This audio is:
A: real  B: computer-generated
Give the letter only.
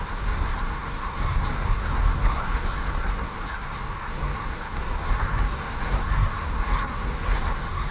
B